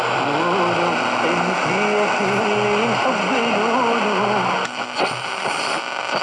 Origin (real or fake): real